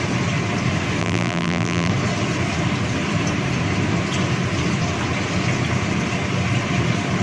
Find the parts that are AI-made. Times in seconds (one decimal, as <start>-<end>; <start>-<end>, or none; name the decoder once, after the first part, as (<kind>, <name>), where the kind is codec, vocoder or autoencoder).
1.0-1.9 (vocoder, BigVGAN v2)